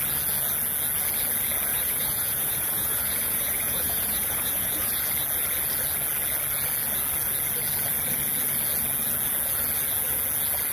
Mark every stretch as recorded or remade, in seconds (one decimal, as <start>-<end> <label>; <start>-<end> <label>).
0.0-1.7 recorded; 1.7-5.0 remade; 5.0-10.7 recorded